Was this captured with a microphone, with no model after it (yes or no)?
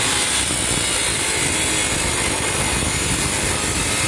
yes